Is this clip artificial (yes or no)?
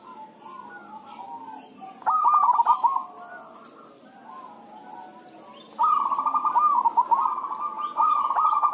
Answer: no